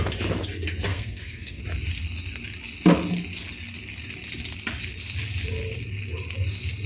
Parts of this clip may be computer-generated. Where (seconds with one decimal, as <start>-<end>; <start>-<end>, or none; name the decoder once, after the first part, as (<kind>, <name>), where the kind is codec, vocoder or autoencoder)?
0.9-1.6 (codec, SNAC)